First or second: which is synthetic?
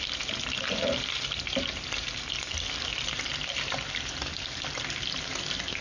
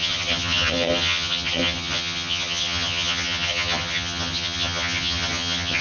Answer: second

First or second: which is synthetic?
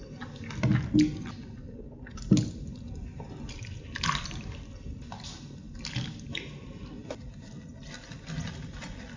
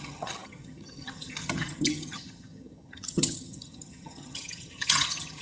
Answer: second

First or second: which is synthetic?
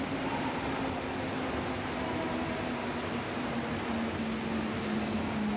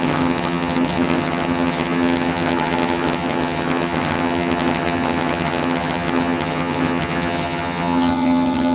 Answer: second